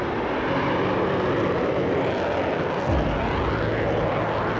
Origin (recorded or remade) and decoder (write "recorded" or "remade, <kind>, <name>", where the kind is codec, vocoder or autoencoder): recorded